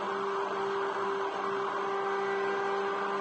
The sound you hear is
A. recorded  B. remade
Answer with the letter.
A